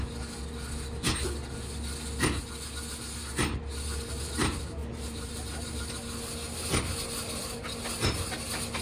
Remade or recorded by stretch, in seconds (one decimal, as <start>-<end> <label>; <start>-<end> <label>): 0.0-4.8 recorded; 4.8-5.9 remade; 5.9-8.8 recorded